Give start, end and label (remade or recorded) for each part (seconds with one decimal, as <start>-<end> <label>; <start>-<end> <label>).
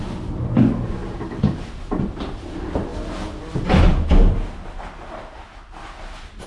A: 0.0-6.5 recorded